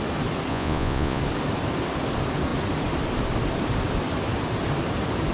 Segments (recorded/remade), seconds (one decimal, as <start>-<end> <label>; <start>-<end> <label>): 0.0-0.5 recorded; 0.5-1.2 remade; 1.2-5.3 recorded